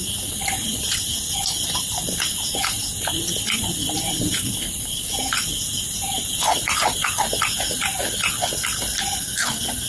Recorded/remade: remade